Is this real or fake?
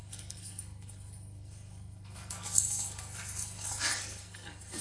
fake